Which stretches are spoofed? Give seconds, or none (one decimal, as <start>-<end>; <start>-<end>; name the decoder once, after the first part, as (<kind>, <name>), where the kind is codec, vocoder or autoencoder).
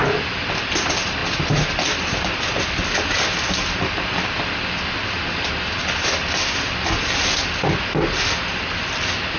none